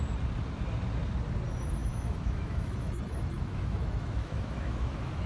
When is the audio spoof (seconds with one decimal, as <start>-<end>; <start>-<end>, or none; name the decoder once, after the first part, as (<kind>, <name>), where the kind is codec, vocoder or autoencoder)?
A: 1.8-5.3 (autoencoder, DAC-VAE)